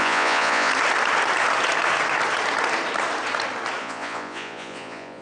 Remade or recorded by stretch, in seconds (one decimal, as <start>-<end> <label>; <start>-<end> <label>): 0.0-0.7 remade; 0.7-3.8 recorded; 3.8-5.2 remade